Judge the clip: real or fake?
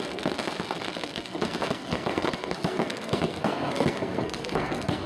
fake